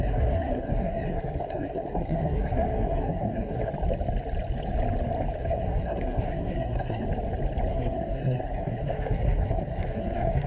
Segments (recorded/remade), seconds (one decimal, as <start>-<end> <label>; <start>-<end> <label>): 0.0-3.7 remade; 3.7-5.4 recorded; 5.4-7.1 remade; 7.1-7.7 recorded; 7.7-10.5 remade